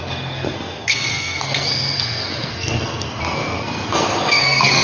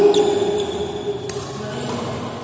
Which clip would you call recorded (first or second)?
second